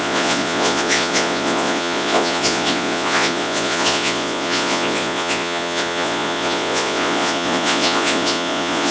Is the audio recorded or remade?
remade